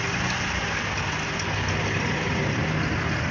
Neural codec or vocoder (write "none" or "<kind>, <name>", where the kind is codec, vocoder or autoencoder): none